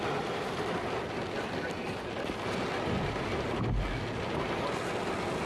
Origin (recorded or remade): recorded